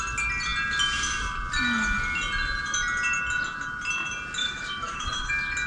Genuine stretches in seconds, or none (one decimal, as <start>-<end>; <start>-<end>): 0.0-4.4; 5.3-5.7